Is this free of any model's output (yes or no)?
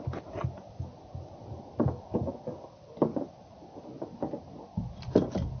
yes